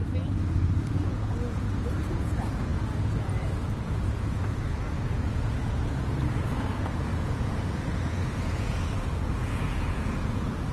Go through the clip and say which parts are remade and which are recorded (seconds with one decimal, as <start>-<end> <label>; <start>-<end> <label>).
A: 0.0-0.9 recorded; 0.9-10.7 remade